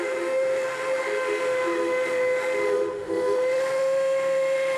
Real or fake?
fake